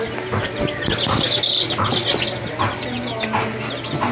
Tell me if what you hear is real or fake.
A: real